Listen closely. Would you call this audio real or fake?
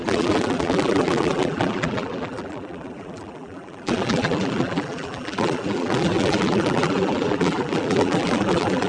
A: fake